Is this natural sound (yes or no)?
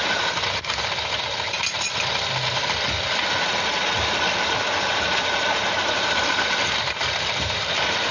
yes